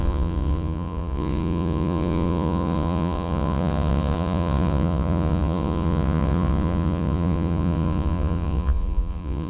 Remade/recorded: remade